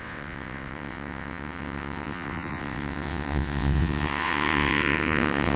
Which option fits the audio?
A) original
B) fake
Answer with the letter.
B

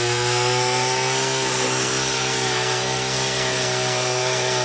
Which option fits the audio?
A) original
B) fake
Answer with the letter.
B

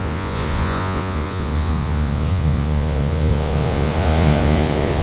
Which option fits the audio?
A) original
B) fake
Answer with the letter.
B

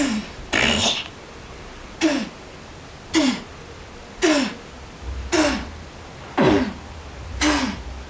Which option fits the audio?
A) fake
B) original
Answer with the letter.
B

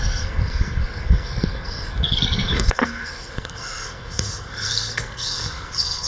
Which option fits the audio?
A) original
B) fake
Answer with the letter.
B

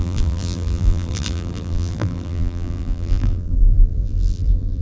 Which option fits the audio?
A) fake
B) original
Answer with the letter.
A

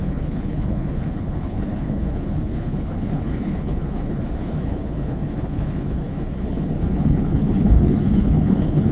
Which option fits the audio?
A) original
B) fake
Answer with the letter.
B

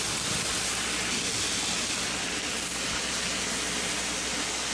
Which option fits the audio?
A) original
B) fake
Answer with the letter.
A